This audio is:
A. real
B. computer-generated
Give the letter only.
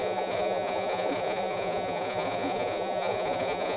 B